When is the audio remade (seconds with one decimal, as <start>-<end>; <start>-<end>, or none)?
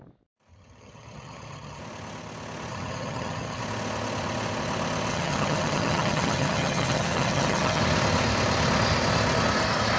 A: 0.5-1.8; 2.7-3.6; 5.1-7.8